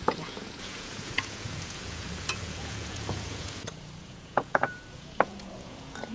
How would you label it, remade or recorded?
remade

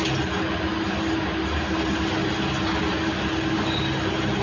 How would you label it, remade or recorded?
recorded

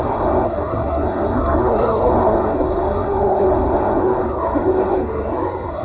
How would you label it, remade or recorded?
remade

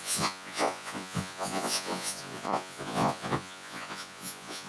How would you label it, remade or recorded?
remade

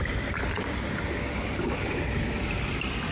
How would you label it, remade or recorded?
recorded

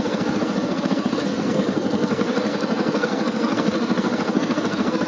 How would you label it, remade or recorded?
remade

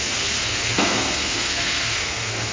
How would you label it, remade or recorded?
remade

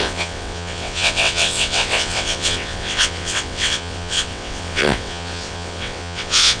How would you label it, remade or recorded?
remade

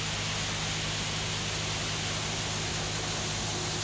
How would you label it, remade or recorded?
recorded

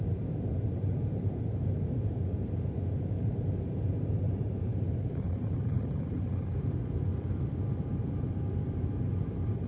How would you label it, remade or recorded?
remade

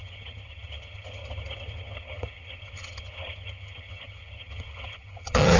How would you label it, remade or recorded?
remade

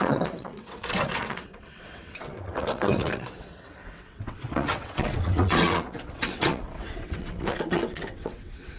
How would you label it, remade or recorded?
remade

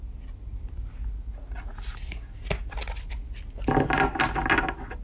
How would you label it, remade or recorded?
recorded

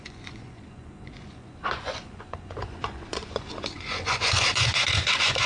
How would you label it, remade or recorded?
remade